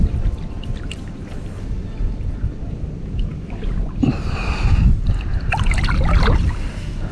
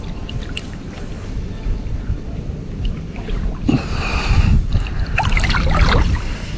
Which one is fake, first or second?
second